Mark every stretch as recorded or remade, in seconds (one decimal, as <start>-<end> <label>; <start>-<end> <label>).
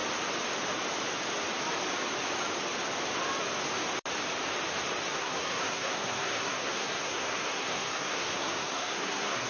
0.0-5.1 recorded; 5.1-9.5 remade